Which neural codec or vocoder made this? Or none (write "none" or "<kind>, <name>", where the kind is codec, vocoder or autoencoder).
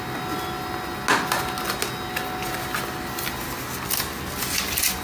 none